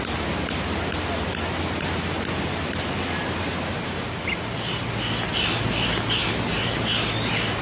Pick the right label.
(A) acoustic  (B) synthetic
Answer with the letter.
A